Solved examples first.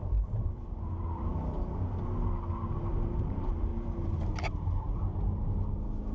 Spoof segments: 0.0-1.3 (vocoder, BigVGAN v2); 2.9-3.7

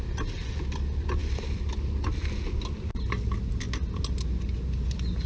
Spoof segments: none

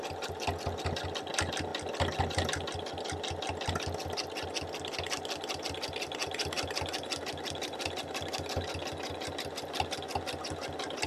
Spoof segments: none